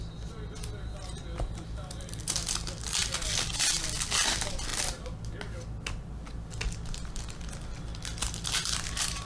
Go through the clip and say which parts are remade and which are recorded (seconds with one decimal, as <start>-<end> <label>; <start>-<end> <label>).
0.0-9.2 recorded